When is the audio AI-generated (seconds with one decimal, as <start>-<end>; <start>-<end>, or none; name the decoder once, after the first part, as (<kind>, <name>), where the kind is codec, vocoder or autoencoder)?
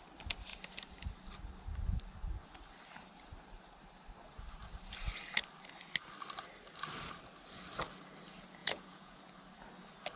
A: 8.6-9.2 (vocoder, Vocos)